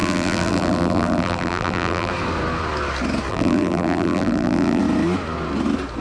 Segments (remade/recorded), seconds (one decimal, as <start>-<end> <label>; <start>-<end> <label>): 0.0-2.1 remade; 2.1-3.3 recorded; 3.3-4.8 remade; 4.8-6.0 recorded